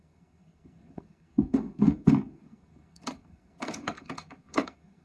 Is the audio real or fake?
fake